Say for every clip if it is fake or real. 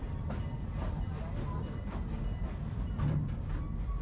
real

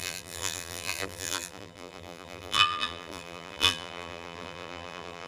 fake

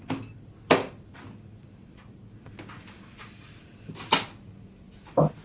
fake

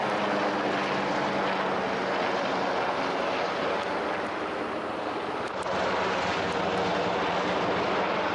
real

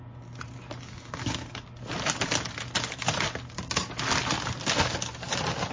real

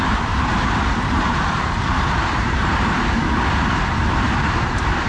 fake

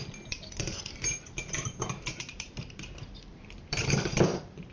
fake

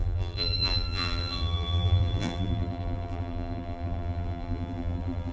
fake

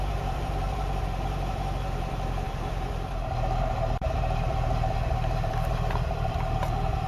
fake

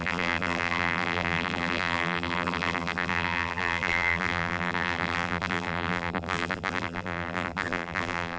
fake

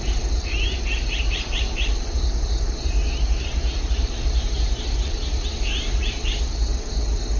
fake